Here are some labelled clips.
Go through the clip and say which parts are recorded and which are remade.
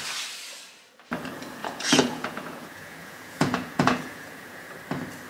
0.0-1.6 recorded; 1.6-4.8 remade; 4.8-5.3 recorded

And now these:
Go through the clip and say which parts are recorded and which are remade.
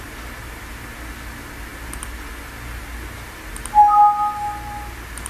0.0-5.3 recorded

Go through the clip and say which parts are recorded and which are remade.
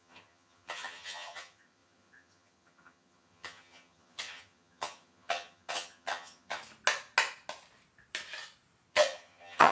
0.0-6.6 remade; 6.6-8.9 recorded; 8.9-9.7 remade